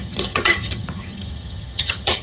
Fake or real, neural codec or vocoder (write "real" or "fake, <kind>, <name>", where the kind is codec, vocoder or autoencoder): fake, vocoder, HiFi-GAN